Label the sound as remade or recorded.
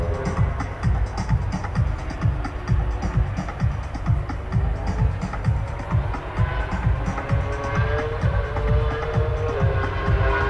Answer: recorded